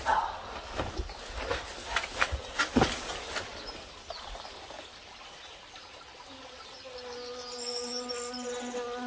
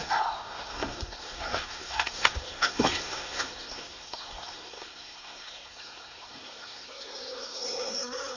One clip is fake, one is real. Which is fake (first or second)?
second